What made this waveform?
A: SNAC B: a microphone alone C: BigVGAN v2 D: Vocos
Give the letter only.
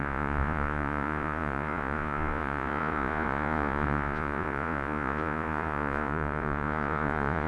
D